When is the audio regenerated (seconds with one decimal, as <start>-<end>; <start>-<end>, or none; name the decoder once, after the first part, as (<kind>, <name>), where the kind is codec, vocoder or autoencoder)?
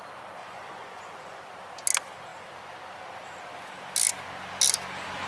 0.4-1.4 (vocoder, Vocos)